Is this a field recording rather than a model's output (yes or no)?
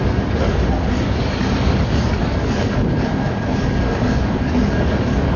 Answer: no